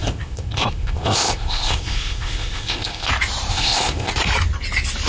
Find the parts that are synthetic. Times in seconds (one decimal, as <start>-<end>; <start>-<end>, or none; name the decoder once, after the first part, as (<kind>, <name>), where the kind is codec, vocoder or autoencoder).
0.0-3.1 (codec, ZipCodec); 3.5-4.1